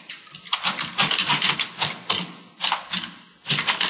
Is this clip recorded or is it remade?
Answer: recorded